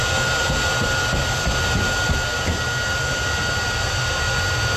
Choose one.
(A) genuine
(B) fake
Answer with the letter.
A